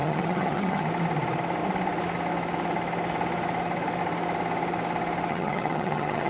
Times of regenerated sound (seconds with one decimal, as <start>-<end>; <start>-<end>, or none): 0.0-0.9; 5.3-6.3